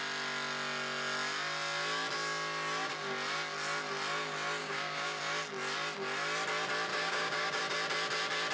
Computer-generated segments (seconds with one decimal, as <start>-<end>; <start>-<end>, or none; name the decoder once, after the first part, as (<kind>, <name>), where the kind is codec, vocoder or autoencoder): 4.6-5.2 (codec, DAC); 6.9-7.6